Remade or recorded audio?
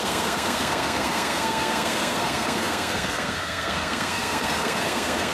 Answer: remade